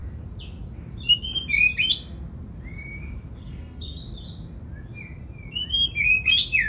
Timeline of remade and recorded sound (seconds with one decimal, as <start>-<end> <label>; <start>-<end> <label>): 0.0-3.4 recorded; 3.4-4.0 remade; 4.0-6.7 recorded